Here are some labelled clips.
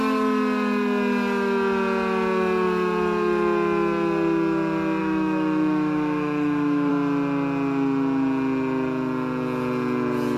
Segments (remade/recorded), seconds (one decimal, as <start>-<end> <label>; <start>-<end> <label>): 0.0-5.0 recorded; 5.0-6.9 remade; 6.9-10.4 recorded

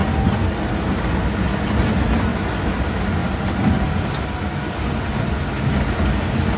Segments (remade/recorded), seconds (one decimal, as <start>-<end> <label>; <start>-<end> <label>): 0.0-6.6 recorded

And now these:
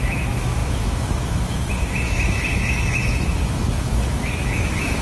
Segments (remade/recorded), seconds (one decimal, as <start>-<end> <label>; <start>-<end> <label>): 0.0-5.0 remade